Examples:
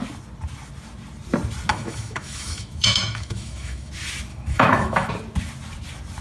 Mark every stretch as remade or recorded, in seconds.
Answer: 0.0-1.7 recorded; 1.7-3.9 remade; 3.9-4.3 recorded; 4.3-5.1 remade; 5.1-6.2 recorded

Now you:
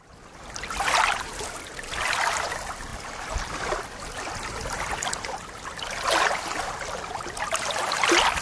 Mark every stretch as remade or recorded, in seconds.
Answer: 0.0-8.4 recorded

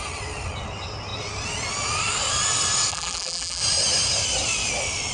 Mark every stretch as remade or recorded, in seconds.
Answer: 0.0-2.9 recorded; 2.9-3.6 remade; 3.6-5.1 recorded

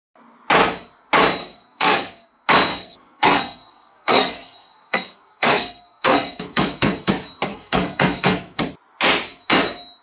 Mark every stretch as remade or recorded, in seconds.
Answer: 0.0-1.4 recorded; 1.4-2.3 remade; 2.3-2.7 recorded; 2.7-7.1 remade; 7.1-7.5 recorded; 7.5-8.6 remade; 8.6-10.0 recorded